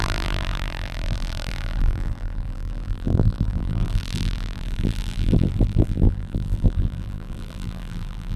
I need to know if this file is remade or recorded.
remade